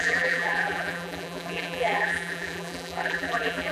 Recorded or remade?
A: remade